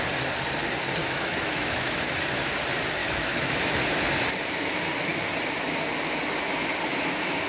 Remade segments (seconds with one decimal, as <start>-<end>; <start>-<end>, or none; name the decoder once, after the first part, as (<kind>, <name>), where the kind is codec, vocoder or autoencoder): 1.0-2.1 (autoencoder, DAC-VAE); 3.0-3.8

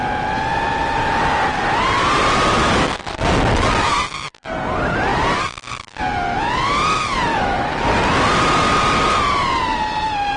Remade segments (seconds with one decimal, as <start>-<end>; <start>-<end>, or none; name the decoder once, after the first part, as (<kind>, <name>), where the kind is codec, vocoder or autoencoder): 7.3-7.9 (autoencoder, DAC-VAE)

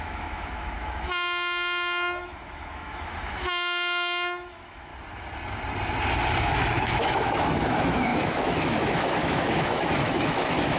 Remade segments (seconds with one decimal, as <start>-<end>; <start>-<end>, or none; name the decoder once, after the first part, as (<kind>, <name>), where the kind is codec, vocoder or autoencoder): 0.0-4.9 (autoencoder, DAC-VAE); 6.4-10.8

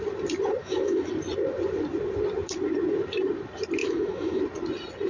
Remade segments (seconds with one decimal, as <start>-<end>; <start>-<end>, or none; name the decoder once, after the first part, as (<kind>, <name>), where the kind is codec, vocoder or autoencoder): 0.6-1.1 (autoencoder, DAC-VAE); 3.8-4.4